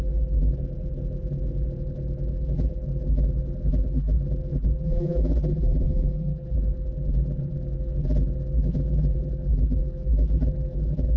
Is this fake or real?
fake